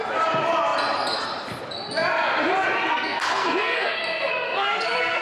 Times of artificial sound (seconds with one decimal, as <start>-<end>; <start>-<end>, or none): 2.9-5.2